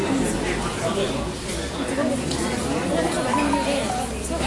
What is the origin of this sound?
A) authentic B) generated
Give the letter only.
A